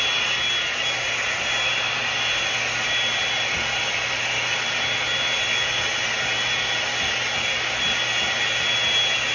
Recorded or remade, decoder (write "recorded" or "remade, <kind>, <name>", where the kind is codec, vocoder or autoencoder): recorded